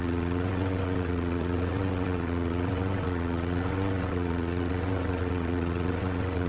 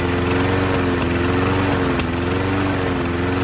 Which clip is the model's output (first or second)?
first